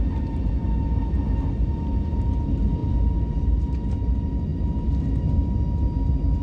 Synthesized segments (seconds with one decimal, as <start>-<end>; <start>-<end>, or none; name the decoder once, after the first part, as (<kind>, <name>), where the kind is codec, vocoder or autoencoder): none